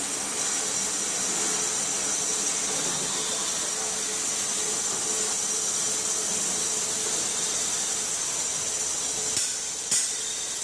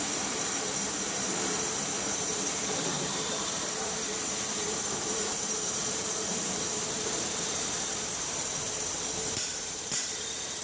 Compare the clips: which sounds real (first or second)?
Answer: first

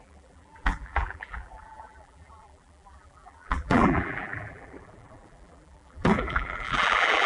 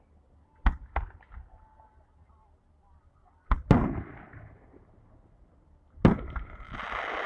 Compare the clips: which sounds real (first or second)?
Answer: second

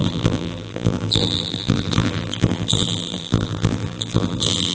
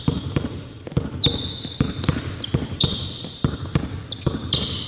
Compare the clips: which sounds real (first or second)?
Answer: second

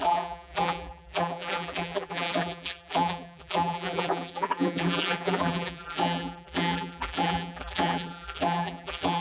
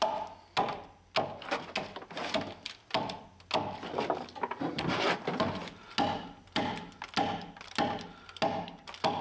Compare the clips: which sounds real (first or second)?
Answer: second